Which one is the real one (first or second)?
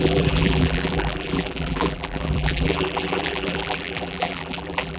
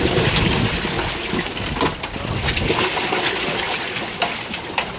second